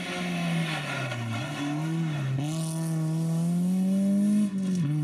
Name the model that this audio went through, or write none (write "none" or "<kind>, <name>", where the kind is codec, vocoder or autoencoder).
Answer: none